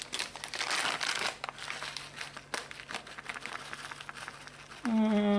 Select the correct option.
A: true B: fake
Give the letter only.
A